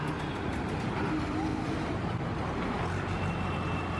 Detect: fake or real real